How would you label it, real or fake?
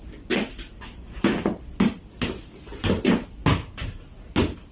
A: real